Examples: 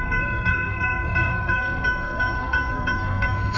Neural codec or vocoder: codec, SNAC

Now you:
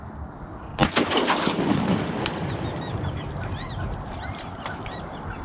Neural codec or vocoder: none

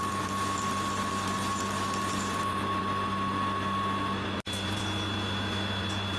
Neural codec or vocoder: none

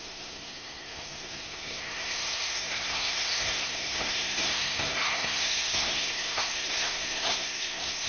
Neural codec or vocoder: codec, SNAC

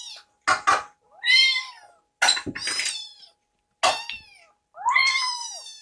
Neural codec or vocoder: none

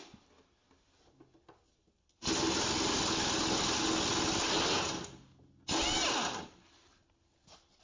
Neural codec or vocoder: none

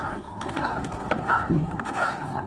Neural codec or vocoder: codec, SNAC